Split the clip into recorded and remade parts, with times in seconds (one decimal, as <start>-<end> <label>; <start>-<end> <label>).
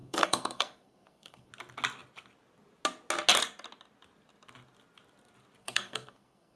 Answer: 0.0-1.5 remade; 1.5-5.6 recorded; 5.6-6.6 remade